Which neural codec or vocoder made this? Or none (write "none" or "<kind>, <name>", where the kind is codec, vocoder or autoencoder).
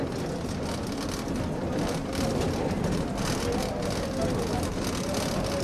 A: none